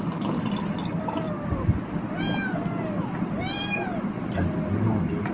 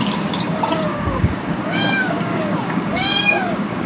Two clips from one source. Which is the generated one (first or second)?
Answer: second